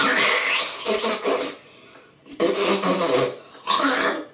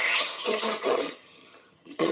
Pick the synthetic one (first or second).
second